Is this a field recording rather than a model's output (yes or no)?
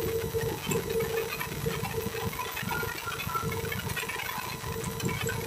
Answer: yes